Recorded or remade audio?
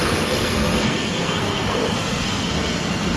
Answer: remade